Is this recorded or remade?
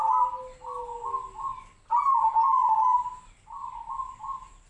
recorded